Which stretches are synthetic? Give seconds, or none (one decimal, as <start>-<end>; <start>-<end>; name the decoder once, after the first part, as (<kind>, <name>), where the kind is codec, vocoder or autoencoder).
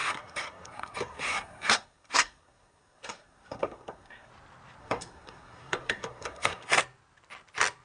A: 0.0-4.3 (codec, SNAC); 4.8-6.8